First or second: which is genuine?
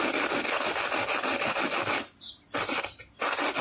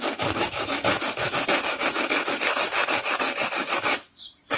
first